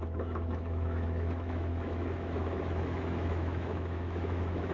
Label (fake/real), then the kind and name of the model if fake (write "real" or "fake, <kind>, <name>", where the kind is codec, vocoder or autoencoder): fake, autoencoder, DAC-VAE